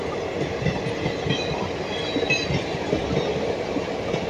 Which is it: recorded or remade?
recorded